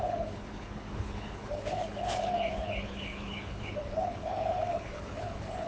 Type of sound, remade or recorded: remade